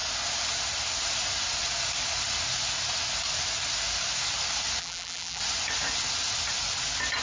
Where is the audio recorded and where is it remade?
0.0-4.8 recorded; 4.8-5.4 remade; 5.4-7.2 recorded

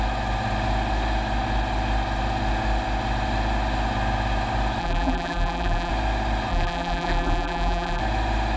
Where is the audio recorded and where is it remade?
0.0-4.8 recorded; 4.8-5.9 remade; 5.9-6.5 recorded; 6.5-8.0 remade; 8.0-8.6 recorded

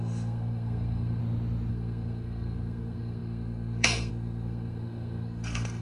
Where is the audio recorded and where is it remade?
0.0-1.2 remade; 1.2-1.7 recorded; 1.7-5.8 remade

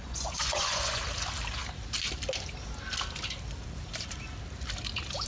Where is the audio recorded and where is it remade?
0.0-1.0 remade; 1.0-5.3 recorded

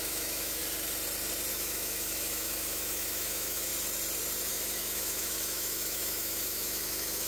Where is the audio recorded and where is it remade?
0.0-0.6 remade; 0.6-1.5 recorded; 1.5-3.7 remade; 3.7-4.5 recorded; 4.5-7.3 remade